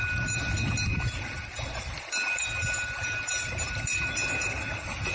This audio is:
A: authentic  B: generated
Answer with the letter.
A